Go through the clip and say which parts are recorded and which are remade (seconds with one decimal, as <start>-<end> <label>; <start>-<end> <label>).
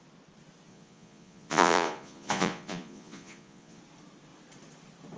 0.0-0.7 recorded; 0.7-3.8 remade; 3.8-5.2 recorded